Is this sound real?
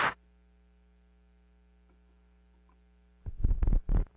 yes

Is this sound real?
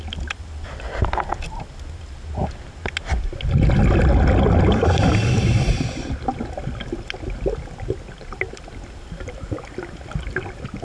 yes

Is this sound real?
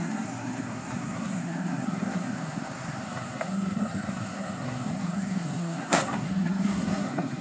no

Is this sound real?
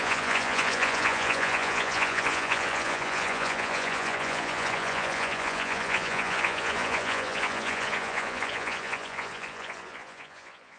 no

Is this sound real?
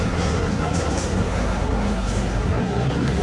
no